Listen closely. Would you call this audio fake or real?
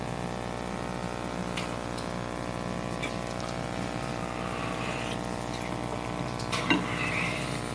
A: real